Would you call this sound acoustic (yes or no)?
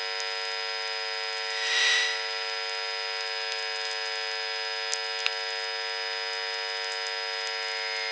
yes